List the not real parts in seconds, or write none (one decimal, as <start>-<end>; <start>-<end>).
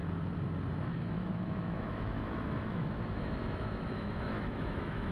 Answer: 0.8-5.1